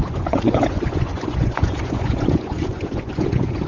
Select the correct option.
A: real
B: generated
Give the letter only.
B